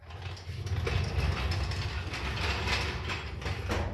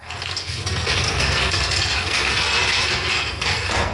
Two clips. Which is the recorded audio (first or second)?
first